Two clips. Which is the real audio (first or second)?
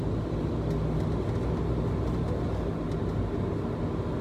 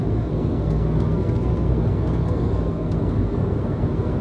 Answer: first